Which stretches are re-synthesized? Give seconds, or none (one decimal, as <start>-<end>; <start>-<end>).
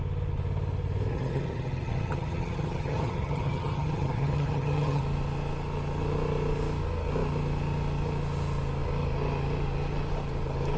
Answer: 1.1-5.0